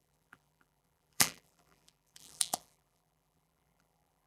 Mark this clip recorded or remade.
remade